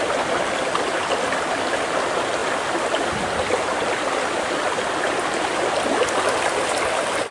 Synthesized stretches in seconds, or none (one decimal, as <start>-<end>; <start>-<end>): none

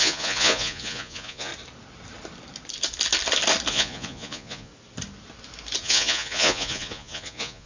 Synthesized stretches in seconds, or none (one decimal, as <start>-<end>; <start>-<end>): 0.0-1.5; 3.7-4.7; 5.8-7.7

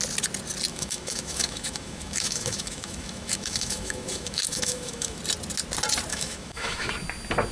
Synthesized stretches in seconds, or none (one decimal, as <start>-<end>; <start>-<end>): 0.7-5.2; 6.1-6.9

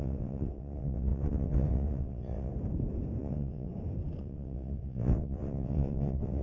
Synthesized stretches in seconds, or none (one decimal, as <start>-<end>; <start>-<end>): 0.0-2.5; 3.2-3.7; 4.2-6.4

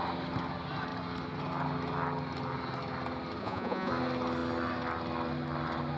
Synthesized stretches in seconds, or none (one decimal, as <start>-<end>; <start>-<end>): 3.4-3.9

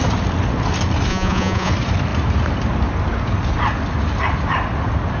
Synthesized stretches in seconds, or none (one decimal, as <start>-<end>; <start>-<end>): 1.1-1.7

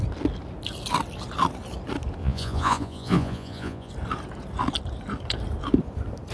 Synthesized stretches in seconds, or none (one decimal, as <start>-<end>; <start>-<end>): 2.2-3.9